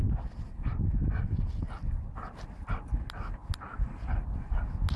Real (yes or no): yes